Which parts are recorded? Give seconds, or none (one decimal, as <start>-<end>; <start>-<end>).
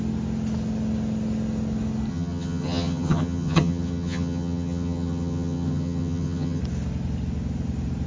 0.0-2.1; 6.6-8.1